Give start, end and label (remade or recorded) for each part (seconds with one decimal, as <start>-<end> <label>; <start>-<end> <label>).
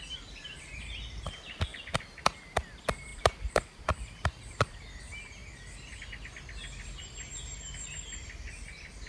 0.0-1.7 recorded; 1.7-2.4 remade; 2.4-3.1 recorded; 3.1-4.8 remade; 4.8-9.1 recorded